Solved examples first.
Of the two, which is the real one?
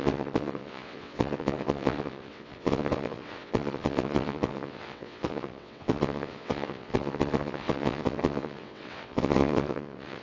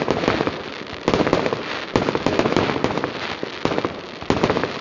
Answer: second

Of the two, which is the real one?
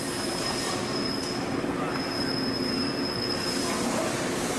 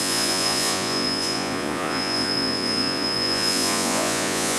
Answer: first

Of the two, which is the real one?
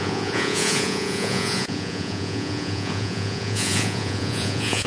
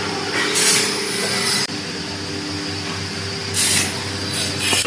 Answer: second